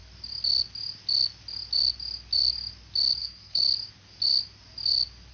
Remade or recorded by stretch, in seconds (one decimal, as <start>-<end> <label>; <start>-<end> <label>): 0.0-3.2 recorded; 3.2-3.6 remade; 3.6-5.3 recorded